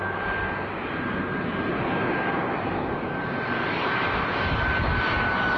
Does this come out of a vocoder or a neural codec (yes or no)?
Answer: no